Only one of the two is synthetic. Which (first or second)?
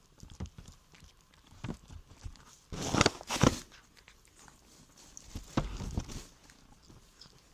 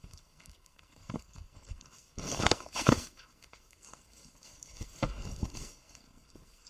second